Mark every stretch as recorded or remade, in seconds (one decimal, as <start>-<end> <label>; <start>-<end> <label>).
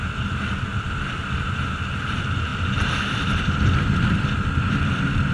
0.0-2.5 recorded; 2.5-3.4 remade; 3.4-5.3 recorded